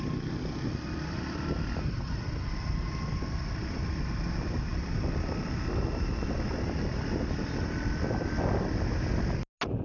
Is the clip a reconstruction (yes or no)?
no